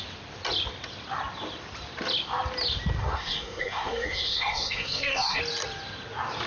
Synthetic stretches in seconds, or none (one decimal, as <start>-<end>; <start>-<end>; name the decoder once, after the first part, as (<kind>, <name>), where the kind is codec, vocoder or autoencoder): 3.0-5.4 (codec, SNAC)